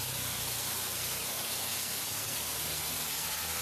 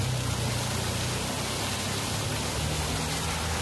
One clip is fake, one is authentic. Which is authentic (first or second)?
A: second